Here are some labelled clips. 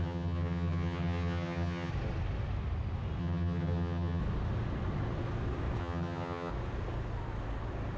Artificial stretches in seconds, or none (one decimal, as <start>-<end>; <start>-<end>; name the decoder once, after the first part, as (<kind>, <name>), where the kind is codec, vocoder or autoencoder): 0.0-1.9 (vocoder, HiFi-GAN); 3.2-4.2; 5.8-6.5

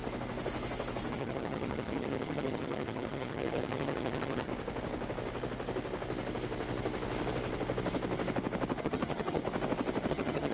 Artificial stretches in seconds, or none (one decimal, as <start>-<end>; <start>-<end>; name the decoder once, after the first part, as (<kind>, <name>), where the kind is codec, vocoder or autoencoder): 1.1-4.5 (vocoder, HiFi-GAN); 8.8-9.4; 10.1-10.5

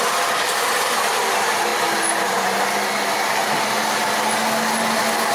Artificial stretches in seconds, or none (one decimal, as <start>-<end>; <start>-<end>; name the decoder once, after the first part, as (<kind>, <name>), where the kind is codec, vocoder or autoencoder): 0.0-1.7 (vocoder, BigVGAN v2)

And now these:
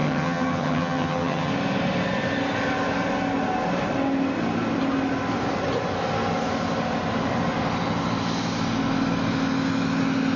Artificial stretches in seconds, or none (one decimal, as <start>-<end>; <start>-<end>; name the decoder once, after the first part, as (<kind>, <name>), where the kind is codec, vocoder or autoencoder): 0.0-1.5 (vocoder, HiFi-GAN)

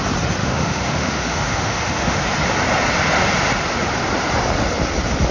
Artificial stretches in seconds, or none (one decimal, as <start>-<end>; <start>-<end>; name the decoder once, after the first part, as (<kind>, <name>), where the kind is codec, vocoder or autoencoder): 0.4-2.2 (autoencoder, DAC-VAE)

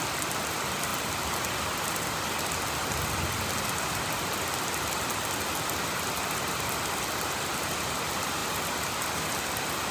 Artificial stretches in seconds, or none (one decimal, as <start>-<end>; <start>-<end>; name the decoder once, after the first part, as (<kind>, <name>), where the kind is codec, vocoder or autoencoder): none

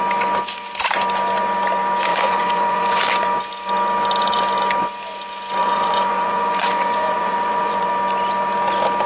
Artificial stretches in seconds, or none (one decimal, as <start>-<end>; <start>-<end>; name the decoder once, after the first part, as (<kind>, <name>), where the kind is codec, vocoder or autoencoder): 2.1-3.0 (vocoder, Vocos); 5.6-7.9